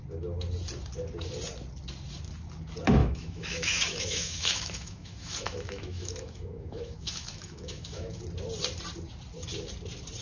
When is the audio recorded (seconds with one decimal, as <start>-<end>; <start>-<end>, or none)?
0.0-3.0; 8.2-10.2